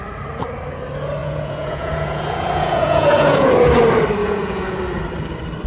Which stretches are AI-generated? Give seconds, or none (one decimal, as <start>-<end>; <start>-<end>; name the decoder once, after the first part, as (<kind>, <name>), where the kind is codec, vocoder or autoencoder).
1.2-3.5 (vocoder, Vocos); 4.2-4.8